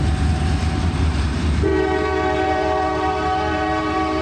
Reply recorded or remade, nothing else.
remade